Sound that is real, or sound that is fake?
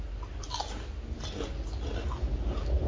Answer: real